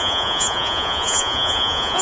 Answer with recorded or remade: remade